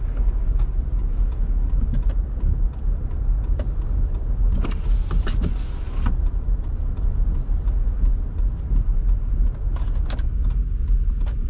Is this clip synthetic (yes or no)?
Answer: no